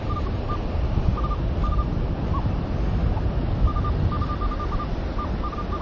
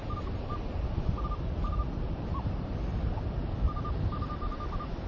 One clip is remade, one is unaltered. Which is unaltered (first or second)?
first